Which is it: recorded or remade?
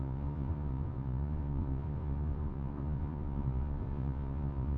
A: remade